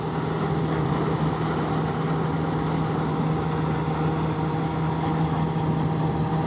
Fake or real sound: real